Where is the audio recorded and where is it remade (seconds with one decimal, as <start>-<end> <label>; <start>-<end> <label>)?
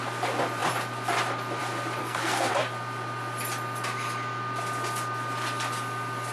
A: 0.0-2.0 recorded; 2.0-2.5 remade; 2.5-6.3 recorded